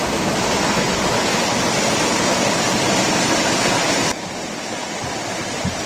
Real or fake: real